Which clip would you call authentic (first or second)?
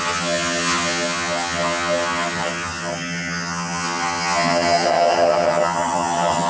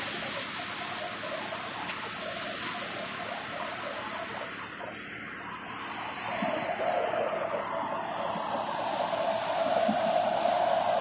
second